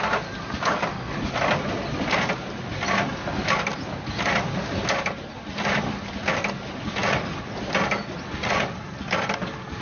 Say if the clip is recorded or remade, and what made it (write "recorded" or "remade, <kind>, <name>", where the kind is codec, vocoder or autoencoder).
recorded